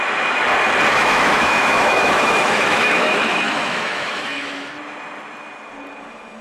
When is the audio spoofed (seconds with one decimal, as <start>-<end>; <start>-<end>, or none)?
0.9-4.7